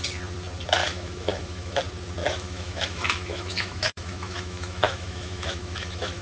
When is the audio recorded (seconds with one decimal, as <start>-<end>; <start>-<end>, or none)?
0.0-0.8; 1.8-2.2